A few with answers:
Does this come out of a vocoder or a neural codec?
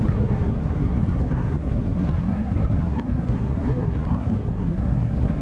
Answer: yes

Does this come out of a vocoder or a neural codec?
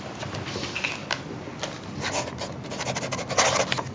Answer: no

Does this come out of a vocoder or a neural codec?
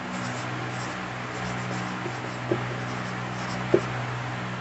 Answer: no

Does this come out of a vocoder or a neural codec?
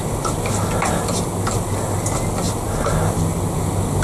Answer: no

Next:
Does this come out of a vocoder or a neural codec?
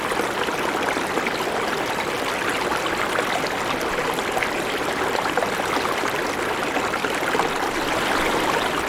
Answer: no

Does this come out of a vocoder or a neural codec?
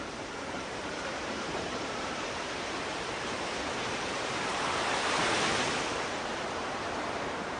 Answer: yes